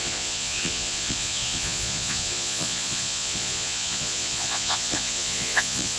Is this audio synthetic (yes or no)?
yes